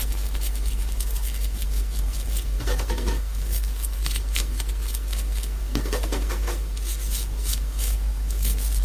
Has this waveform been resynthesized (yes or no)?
yes